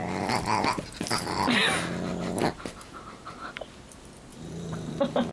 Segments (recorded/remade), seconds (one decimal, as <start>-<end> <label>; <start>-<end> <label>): 0.0-1.1 remade; 1.1-2.1 recorded; 2.1-3.7 remade; 3.7-4.3 recorded; 4.3-5.3 remade

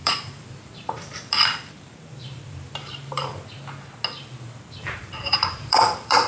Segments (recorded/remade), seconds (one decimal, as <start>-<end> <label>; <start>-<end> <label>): 0.0-3.3 remade; 3.3-4.8 recorded; 4.8-6.3 remade

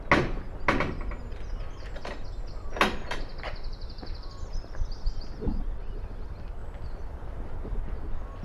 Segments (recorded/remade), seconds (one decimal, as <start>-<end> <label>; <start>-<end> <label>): 0.0-3.3 recorded; 3.3-6.1 remade; 6.1-6.6 recorded; 6.6-7.8 remade; 7.8-8.4 recorded

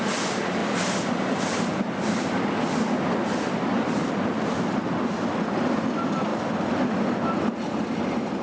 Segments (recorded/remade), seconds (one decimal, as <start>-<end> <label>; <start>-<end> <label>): 0.0-0.6 recorded; 0.6-4.1 remade; 4.1-8.4 recorded

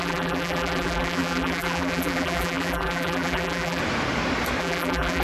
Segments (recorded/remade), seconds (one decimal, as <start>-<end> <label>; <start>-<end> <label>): 0.0-3.8 remade; 3.8-4.6 recorded; 4.6-5.2 remade

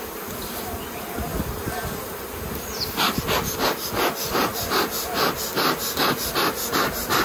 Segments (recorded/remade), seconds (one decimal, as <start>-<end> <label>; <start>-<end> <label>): 0.0-1.3 recorded; 1.3-3.2 remade; 3.2-7.2 recorded

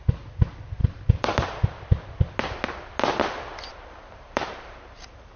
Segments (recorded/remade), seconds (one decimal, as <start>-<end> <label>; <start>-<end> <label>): 0.0-0.8 recorded; 0.8-1.6 remade; 1.6-3.7 recorded; 3.7-5.4 remade